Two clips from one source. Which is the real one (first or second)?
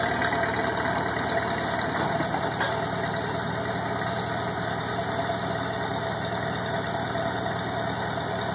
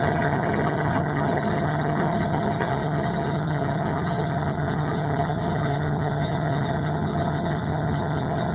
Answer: first